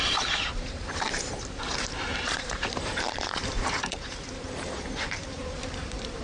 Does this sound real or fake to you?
fake